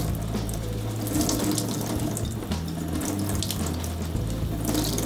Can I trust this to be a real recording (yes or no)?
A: yes